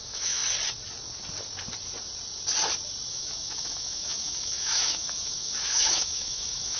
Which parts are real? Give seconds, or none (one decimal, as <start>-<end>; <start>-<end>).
0.4-3.1